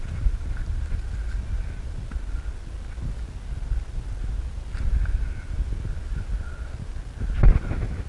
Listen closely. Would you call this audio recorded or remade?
recorded